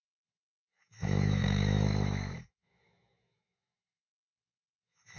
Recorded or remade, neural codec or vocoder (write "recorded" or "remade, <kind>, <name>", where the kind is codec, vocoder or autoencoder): remade, autoencoder, DAC-VAE